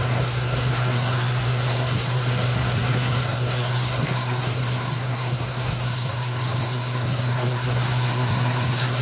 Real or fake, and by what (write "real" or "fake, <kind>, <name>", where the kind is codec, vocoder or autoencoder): fake, codec, SNAC